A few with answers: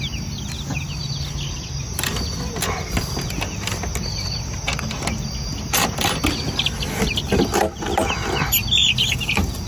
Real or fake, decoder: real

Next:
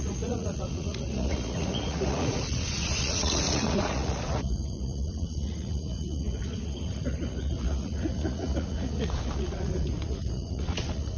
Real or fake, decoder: fake, vocoder, Vocos